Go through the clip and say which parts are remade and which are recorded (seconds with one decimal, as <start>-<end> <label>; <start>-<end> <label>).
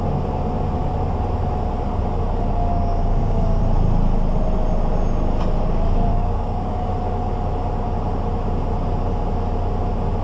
0.0-2.7 recorded; 2.7-3.6 remade; 3.6-6.1 recorded; 6.1-6.9 remade; 6.9-10.2 recorded